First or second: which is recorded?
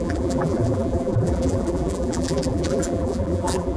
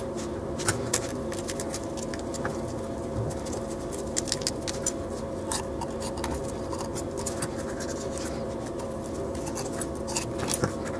second